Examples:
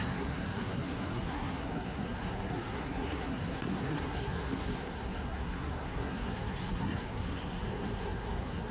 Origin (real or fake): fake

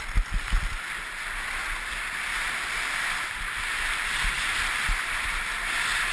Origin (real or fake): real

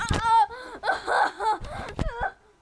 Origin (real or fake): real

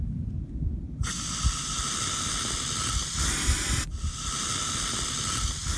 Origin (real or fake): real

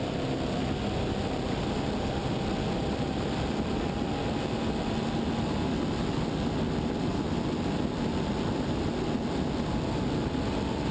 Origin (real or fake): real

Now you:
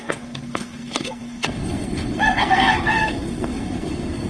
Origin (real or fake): fake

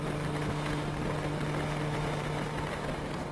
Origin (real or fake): real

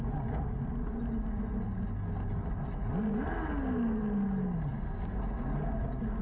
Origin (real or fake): real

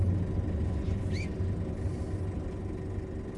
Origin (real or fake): real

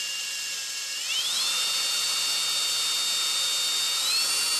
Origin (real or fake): real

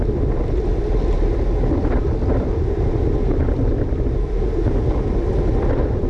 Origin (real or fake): real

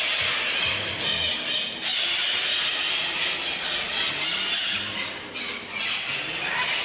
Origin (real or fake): real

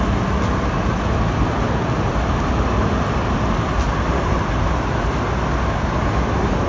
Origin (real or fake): real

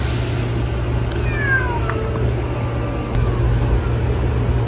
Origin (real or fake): real